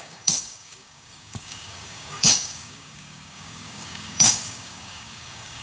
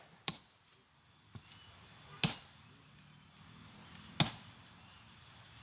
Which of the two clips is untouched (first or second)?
second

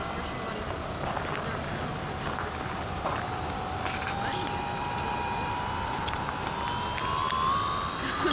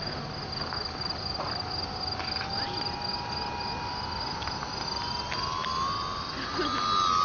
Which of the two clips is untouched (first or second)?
second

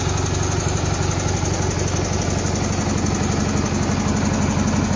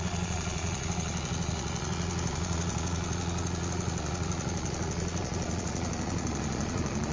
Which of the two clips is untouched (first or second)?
first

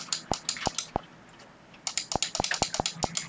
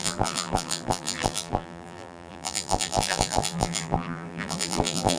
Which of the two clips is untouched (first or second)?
first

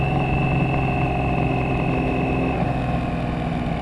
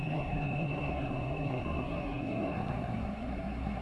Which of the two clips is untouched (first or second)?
first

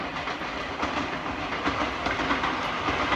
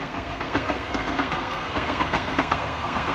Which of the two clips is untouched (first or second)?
first